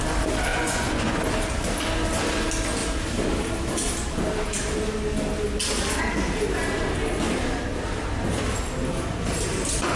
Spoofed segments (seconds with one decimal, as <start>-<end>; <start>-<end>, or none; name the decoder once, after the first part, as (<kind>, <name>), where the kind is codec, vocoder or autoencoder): 0.5-1.2 (vocoder, Vocos)